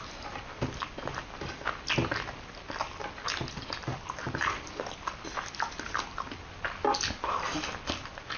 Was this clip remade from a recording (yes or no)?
no